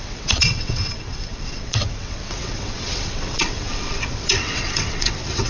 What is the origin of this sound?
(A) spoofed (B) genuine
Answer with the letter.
A